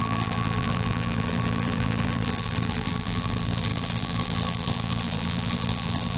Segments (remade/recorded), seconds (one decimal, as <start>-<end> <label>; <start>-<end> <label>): 0.0-6.2 remade